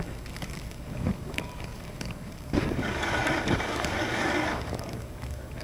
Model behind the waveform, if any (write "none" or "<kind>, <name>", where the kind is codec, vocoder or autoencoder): codec, DAC